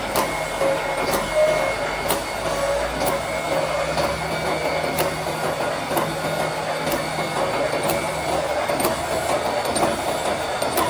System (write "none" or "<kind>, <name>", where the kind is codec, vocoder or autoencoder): none